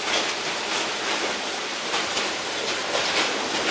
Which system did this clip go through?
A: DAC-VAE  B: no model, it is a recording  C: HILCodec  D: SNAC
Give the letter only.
B